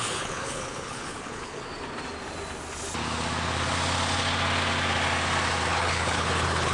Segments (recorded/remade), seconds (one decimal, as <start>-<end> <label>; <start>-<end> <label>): 0.0-1.7 remade; 1.7-5.7 recorded; 5.7-6.7 remade

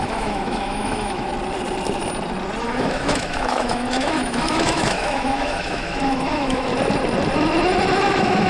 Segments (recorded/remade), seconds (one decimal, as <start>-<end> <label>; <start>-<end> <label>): 0.0-1.3 remade; 1.3-2.6 recorded; 2.6-6.7 remade; 6.7-8.1 recorded; 8.1-8.5 remade